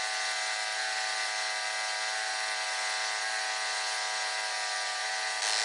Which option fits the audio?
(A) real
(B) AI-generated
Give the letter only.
A